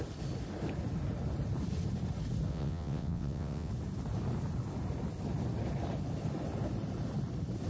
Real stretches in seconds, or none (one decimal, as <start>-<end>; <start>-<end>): 0.0-2.5; 3.7-7.7